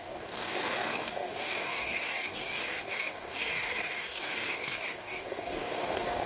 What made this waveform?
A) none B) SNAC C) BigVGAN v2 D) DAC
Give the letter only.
D